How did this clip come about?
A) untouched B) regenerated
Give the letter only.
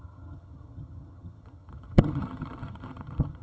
B